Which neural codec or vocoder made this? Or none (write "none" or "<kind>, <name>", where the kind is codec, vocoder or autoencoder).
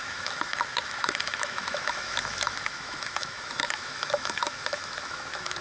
autoencoder, DAC-VAE